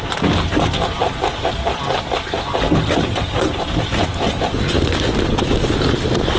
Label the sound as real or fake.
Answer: real